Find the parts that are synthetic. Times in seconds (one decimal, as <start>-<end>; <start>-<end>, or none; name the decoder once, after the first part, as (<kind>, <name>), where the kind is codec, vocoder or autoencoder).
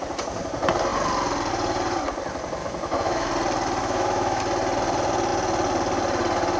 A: 2.6-3.3 (autoencoder, DAC-VAE); 3.8-4.4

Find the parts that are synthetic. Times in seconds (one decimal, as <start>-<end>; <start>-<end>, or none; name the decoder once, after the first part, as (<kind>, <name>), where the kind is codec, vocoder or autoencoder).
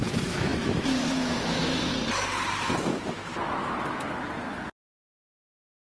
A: 0.0-1.9 (autoencoder, DAC-VAE); 2.8-3.2; 4.9-5.9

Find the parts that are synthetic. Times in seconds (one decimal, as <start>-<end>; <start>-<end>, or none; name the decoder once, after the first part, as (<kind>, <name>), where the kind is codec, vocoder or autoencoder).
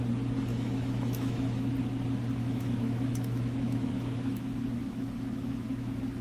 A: 0.5-1.7 (autoencoder, DAC-VAE); 2.4-6.2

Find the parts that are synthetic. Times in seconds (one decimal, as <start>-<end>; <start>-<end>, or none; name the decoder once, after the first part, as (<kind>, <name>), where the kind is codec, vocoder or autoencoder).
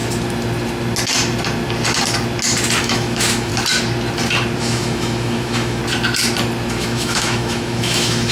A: 2.8-3.5 (autoencoder, DAC-VAE); 4.6-5.8; 6.7-8.3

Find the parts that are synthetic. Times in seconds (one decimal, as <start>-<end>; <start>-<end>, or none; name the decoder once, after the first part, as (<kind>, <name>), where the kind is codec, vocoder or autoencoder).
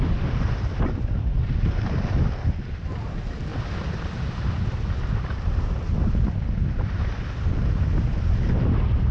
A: none